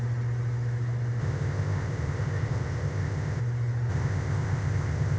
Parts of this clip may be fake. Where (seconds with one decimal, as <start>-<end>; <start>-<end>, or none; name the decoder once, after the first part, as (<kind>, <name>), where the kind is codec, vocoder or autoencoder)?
1.2-3.4 (codec, ZipCodec); 3.9-5.2